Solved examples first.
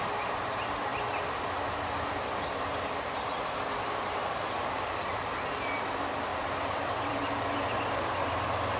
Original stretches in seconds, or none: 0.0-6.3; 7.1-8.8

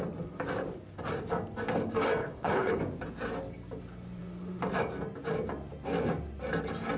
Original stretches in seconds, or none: 0.0-2.2; 2.8-7.0